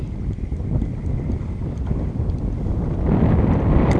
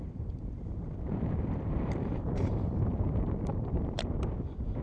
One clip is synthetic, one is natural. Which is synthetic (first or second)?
second